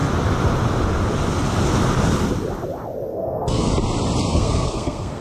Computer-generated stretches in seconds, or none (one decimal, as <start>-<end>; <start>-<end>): 3.1-3.7; 4.3-5.2